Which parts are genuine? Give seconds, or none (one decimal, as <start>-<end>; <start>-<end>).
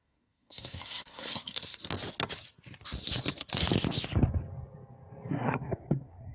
1.8-5.3